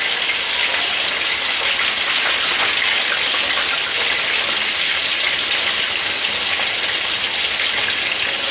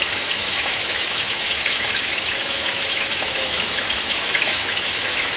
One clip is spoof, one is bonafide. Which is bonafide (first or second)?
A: first